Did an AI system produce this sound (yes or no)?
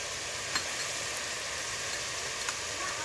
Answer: no